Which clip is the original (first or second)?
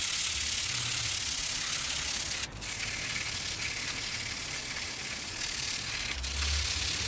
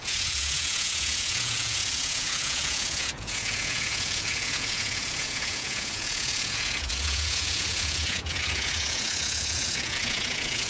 first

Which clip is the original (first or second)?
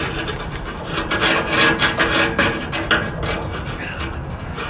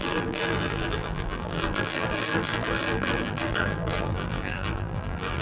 first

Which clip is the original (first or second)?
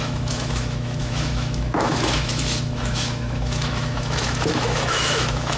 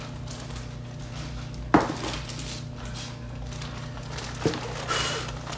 second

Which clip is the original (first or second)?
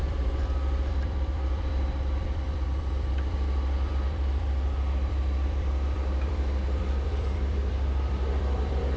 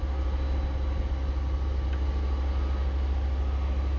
second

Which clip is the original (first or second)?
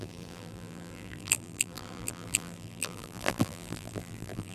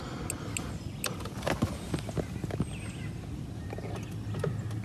second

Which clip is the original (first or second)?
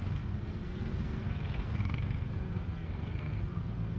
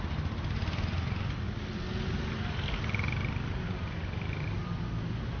second